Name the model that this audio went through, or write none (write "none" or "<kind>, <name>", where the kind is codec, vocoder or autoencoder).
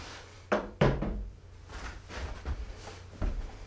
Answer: vocoder, BigVGAN v2